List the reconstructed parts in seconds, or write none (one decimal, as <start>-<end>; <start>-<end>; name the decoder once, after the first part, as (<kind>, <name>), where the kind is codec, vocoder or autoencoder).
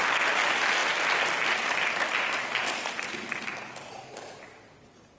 none